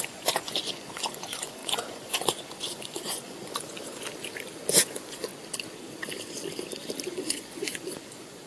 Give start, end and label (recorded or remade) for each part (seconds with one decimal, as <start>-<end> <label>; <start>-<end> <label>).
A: 0.0-4.1 remade; 4.1-4.8 recorded; 4.8-5.3 remade; 5.3-7.1 recorded; 7.1-8.5 remade